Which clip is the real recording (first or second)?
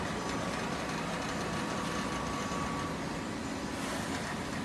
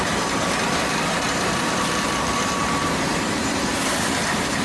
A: first